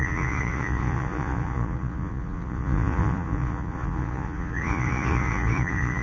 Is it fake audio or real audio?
fake